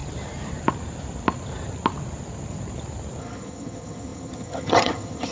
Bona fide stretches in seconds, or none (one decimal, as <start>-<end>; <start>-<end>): 0.0-3.2